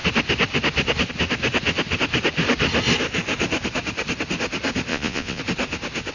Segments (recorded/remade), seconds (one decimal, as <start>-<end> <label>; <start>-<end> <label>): 0.0-4.9 recorded; 4.9-5.4 remade; 5.4-6.1 recorded